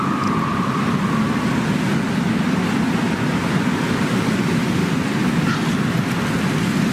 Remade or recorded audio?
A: recorded